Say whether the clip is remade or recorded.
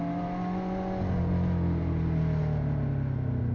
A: recorded